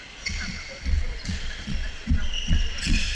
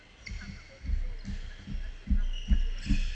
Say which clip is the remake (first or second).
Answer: first